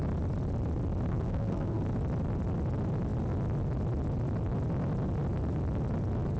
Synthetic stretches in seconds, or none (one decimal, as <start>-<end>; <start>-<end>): 1.1-1.8